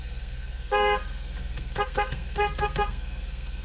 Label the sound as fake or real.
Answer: fake